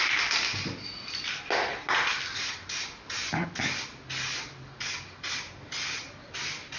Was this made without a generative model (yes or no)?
yes